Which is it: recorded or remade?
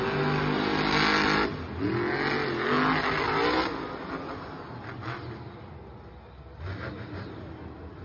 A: recorded